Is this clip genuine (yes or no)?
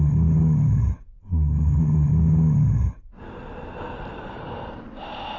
yes